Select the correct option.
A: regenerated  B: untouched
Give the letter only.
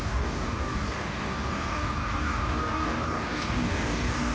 A